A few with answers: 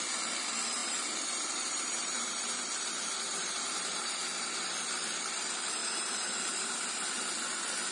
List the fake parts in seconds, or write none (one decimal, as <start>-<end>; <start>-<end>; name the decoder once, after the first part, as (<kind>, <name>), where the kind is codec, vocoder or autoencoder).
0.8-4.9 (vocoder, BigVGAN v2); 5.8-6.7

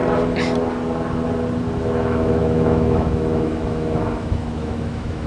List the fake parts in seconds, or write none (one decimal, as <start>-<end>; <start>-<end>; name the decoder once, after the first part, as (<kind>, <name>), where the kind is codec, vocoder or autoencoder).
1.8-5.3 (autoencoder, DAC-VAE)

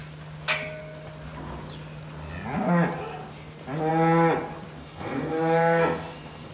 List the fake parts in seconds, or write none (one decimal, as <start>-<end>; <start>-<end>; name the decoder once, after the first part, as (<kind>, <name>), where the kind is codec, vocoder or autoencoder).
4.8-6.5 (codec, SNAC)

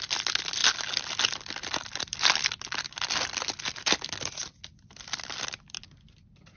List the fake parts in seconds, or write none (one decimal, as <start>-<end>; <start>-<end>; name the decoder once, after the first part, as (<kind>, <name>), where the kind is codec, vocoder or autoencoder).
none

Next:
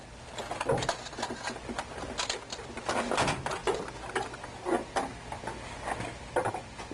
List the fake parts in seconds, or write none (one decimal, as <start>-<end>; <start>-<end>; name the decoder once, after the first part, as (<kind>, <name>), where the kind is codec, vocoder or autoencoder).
none

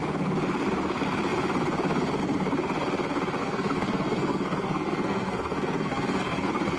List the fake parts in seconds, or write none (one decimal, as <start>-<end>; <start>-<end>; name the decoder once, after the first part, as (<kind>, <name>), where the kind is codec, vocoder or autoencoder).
3.4-6.8 (codec, SNAC)